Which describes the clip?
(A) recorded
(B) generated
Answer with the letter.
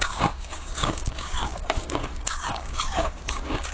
B